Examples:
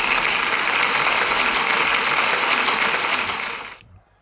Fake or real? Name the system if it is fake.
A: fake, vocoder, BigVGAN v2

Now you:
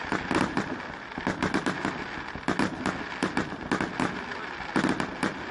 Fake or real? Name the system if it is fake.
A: real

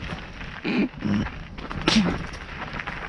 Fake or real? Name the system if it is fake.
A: real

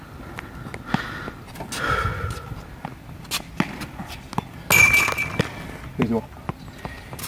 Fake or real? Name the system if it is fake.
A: real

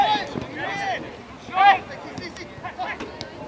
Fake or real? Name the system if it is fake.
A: real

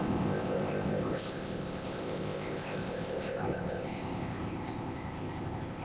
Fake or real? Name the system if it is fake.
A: fake, codec, ZipCodec